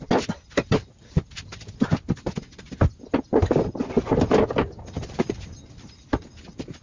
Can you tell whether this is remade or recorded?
recorded